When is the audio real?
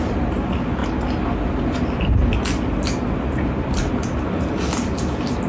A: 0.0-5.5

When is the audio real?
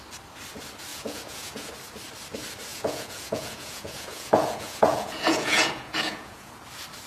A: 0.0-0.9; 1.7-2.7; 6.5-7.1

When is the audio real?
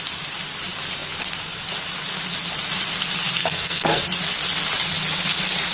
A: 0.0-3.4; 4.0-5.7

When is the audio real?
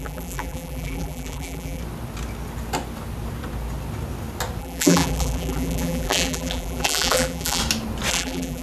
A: 1.8-4.6; 7.6-8.1